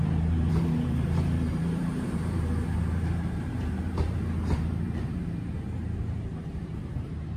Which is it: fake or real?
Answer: fake